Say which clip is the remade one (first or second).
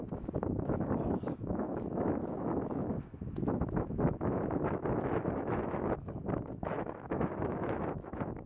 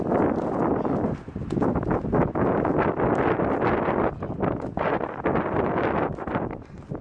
first